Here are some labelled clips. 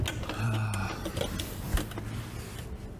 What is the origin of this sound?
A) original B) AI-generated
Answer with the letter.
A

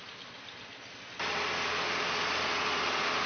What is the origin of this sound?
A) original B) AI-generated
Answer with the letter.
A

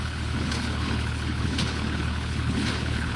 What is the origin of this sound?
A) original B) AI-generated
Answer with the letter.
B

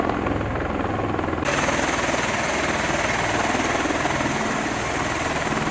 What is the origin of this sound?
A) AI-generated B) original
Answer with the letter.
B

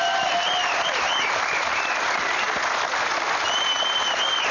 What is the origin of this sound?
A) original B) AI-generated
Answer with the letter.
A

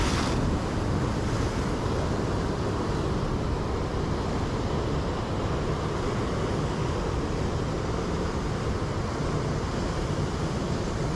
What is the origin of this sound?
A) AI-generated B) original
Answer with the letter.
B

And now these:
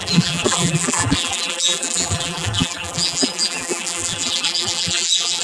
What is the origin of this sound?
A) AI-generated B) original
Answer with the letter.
A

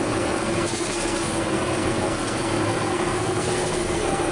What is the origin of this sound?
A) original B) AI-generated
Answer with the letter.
B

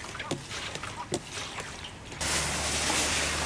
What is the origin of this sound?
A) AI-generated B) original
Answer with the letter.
B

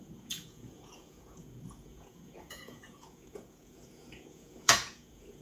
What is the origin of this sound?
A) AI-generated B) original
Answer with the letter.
A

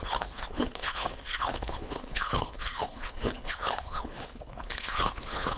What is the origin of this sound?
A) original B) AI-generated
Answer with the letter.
B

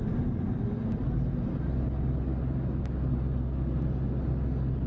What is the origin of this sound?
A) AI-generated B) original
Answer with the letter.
B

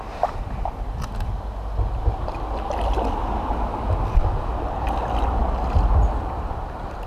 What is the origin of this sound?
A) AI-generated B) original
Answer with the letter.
B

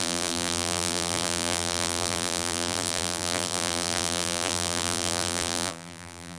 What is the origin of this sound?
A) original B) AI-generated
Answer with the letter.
B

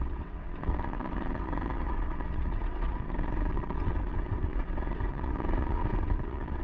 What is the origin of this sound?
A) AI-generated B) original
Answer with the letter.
A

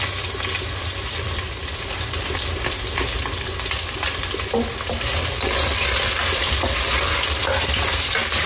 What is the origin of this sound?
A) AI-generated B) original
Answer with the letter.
B